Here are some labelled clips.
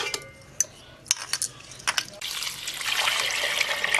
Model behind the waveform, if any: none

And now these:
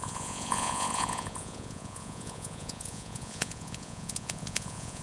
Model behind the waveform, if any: vocoder, Vocos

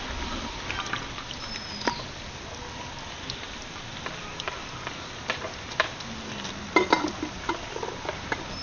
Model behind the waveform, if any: none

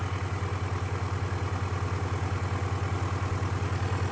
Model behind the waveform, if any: none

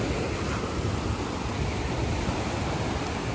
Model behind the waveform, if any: none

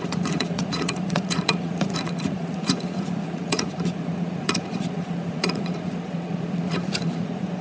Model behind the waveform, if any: vocoder, Vocos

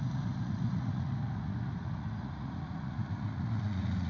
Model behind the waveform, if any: vocoder, Vocos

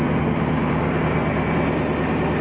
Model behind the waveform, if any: none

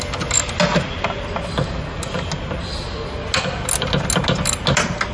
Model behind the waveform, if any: none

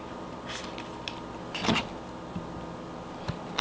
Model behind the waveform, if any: none